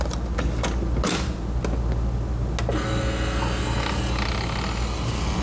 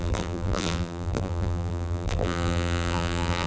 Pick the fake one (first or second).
second